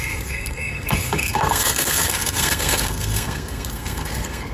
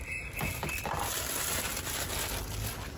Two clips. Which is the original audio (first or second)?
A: second